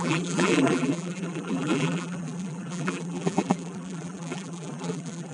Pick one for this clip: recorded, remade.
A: remade